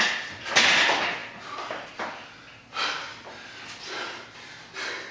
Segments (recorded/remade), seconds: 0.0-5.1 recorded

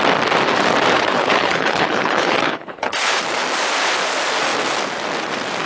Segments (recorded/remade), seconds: 0.0-0.9 recorded; 0.9-3.2 remade; 3.2-5.7 recorded

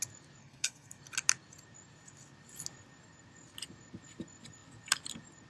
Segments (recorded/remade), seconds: 0.0-0.4 recorded; 0.4-1.0 remade; 1.0-5.5 recorded

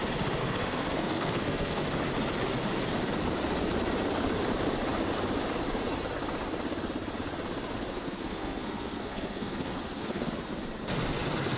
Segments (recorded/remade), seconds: 0.0-0.4 recorded; 0.4-1.8 remade; 1.8-7.9 recorded; 7.9-10.3 remade; 10.3-11.6 recorded

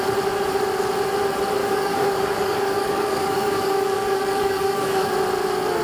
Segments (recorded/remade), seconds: 0.0-1.6 recorded; 1.6-5.1 remade; 5.1-5.8 recorded

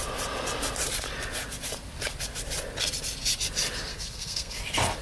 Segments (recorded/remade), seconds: 0.0-3.9 recorded; 3.9-4.6 remade; 4.6-5.0 recorded

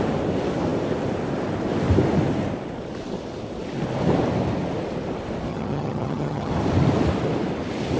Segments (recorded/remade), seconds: 0.0-5.5 recorded; 5.5-6.5 remade; 6.5-8.0 recorded